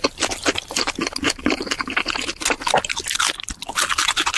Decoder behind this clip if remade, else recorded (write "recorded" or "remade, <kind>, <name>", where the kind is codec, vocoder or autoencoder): recorded